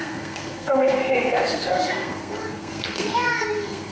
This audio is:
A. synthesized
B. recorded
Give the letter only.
A